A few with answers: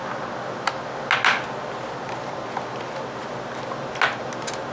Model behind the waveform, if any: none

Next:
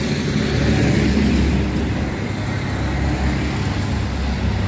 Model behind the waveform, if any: none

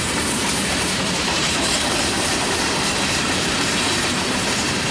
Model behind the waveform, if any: vocoder, BigVGAN v2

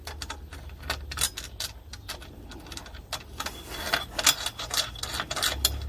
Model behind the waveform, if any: none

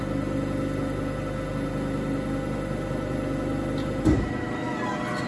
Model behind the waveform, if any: none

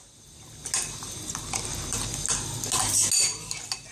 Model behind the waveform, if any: none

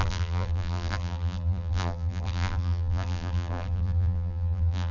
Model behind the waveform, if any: vocoder, BigVGAN v2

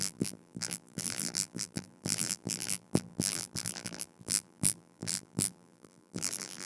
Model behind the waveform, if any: vocoder, BigVGAN v2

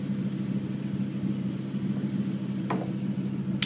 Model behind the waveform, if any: none